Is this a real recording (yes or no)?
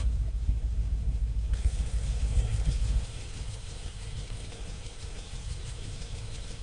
no